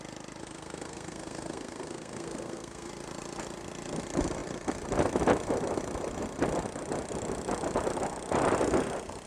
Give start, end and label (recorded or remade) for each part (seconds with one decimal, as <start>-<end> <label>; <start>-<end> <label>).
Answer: 0.0-0.4 recorded; 0.4-2.9 remade; 2.9-9.3 recorded